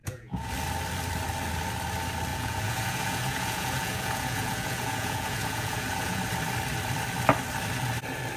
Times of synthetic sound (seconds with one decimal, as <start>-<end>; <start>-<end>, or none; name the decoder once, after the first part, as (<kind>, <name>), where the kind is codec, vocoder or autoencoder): 0.0-0.5 (vocoder, Vocos); 2.3-6.2